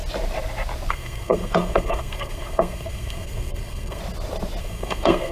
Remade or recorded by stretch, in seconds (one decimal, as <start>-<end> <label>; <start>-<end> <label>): 0.0-0.9 recorded; 0.9-4.0 remade; 4.0-4.6 recorded; 4.6-5.3 remade